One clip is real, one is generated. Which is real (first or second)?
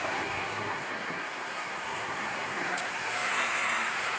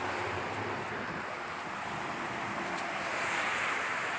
second